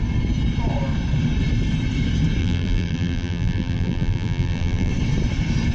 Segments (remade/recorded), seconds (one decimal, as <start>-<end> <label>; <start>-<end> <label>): 0.0-2.4 recorded; 2.4-4.9 remade; 4.9-5.7 recorded

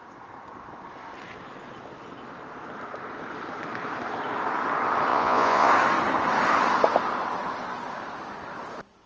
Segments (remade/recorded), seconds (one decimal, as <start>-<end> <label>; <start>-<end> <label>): 0.0-5.1 recorded; 5.1-5.7 remade; 5.7-9.1 recorded

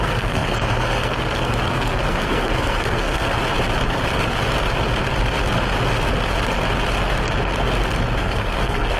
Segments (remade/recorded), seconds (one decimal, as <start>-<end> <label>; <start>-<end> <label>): 0.0-3.4 remade; 3.4-8.2 recorded; 8.2-9.0 remade

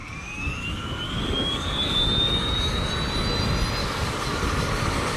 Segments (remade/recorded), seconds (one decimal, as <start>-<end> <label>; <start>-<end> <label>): 0.0-2.9 remade; 2.9-3.8 recorded; 3.8-5.2 remade

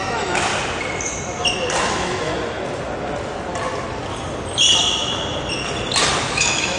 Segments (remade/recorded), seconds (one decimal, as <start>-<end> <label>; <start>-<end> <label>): 0.0-0.5 remade; 0.5-1.9 recorded; 1.9-2.3 remade; 2.3-6.2 recorded; 6.2-6.8 remade